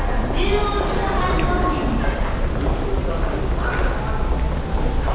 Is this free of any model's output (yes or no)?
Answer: yes